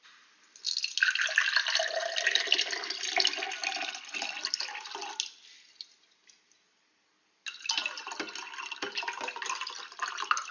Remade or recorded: recorded